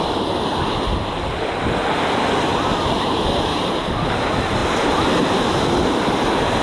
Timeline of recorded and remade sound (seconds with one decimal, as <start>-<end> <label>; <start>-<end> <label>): 0.0-6.6 recorded